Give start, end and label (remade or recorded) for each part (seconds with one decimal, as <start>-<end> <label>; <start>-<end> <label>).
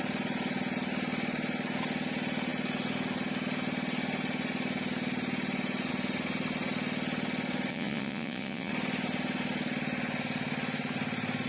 0.0-7.7 recorded; 7.7-8.7 remade; 8.7-11.5 recorded